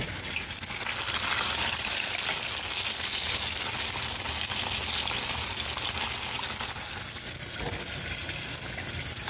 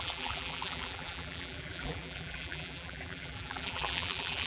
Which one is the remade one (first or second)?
second